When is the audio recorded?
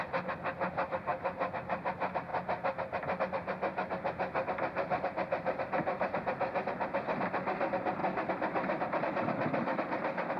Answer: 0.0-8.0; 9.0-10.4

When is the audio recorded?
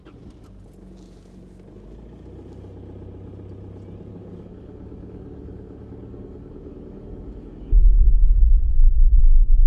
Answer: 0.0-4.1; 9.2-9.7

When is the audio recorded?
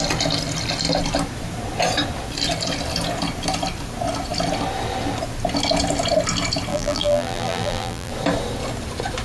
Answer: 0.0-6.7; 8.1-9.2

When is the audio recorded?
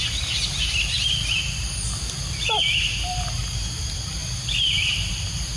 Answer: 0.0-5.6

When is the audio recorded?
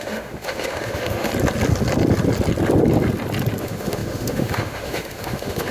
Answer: 1.3-3.6